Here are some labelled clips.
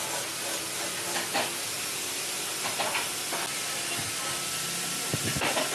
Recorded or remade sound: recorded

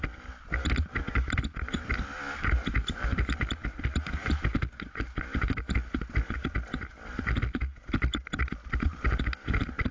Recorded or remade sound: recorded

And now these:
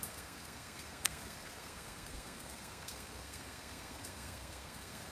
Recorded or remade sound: remade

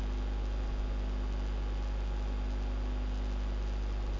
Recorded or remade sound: recorded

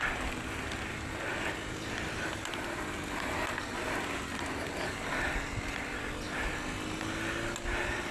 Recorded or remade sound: recorded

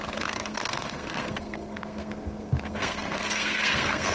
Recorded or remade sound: remade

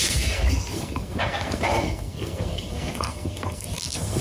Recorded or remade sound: remade